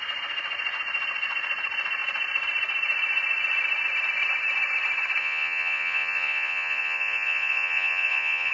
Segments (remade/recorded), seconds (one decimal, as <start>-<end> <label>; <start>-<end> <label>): 0.0-5.2 recorded; 5.2-8.5 remade